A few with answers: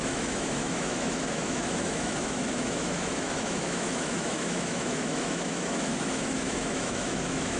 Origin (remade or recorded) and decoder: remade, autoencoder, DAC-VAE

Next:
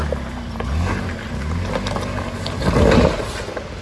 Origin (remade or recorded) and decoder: recorded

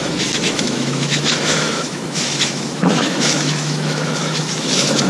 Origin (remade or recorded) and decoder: remade, autoencoder, DAC-VAE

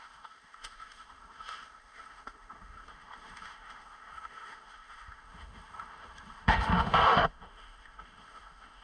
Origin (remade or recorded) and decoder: remade, autoencoder, DAC-VAE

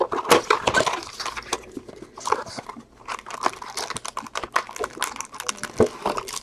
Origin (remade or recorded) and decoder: recorded